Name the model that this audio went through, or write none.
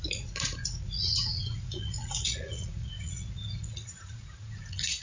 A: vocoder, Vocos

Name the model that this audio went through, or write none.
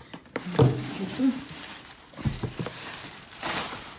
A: vocoder, BigVGAN v2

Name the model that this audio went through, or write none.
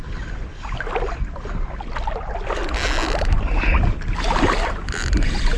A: none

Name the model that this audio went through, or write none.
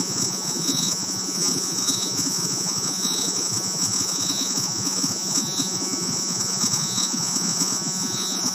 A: vocoder, Vocos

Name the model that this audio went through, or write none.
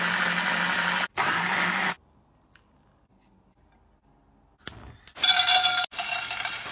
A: none